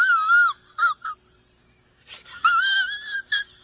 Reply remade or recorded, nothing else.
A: recorded